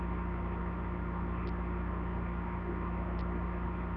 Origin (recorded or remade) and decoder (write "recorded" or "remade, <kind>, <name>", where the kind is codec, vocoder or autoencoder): recorded